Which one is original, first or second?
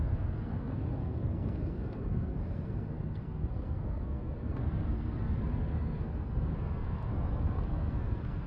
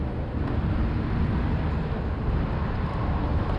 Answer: second